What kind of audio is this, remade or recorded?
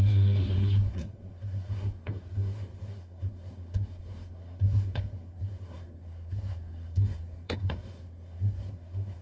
remade